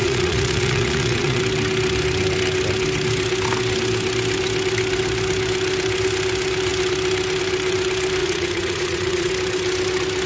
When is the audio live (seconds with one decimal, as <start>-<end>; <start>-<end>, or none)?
1.4-8.2; 9.3-10.3